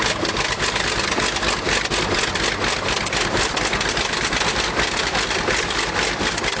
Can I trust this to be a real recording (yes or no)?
yes